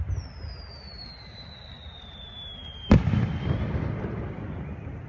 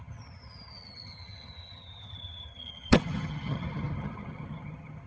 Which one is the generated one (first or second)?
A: second